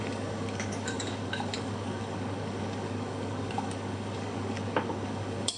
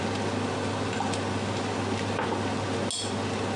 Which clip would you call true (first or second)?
second